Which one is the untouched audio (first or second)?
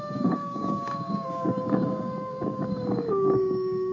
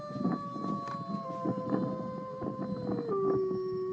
second